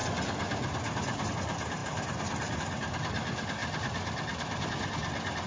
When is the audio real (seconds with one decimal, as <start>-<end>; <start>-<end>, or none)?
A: 0.0-1.8; 2.6-3.6; 4.7-5.5

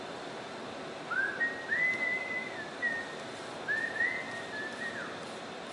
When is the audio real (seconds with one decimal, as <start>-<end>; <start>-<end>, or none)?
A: 0.0-5.7